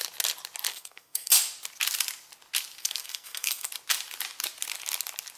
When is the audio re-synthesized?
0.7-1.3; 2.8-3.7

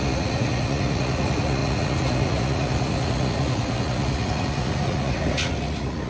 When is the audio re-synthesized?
0.0-6.1

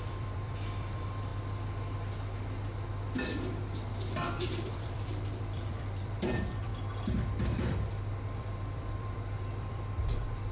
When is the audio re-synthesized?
0.0-1.3; 3.9-6.7; 8.4-10.5

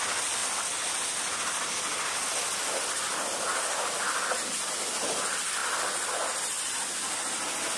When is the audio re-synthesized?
none

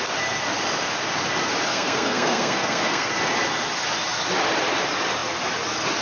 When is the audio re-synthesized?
1.7-3.1

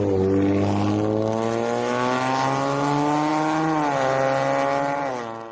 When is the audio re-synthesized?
none

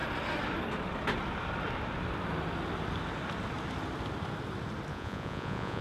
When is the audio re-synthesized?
4.9-5.8

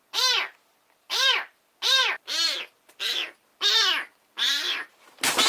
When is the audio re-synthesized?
0.8-2.0; 2.6-5.5